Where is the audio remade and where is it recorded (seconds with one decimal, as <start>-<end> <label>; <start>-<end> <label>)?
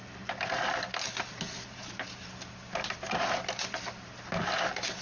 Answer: 0.0-5.0 recorded